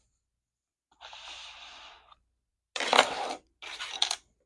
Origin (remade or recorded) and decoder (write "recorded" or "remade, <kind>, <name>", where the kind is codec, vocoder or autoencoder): recorded